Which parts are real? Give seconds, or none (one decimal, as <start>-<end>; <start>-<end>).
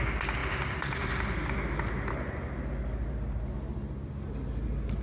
0.0-0.4; 1.2-3.0; 4.1-5.0